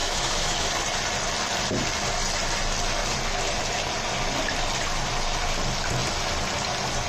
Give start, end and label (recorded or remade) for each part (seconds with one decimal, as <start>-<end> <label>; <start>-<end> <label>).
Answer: 0.0-0.7 remade; 0.7-7.1 recorded